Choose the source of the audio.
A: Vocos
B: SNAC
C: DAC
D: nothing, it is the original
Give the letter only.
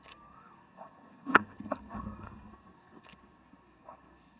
B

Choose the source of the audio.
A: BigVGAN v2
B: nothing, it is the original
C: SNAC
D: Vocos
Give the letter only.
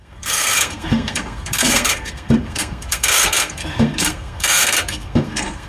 C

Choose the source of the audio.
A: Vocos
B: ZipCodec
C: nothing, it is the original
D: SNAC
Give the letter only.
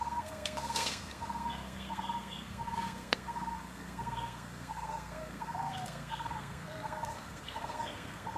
D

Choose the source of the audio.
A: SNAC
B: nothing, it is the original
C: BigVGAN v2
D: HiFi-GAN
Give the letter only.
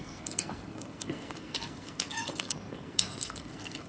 A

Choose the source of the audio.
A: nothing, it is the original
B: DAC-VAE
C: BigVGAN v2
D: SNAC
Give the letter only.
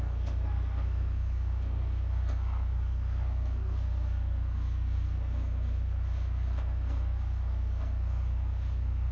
D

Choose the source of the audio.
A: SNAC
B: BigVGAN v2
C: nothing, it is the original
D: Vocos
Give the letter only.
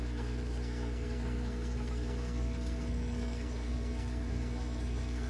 A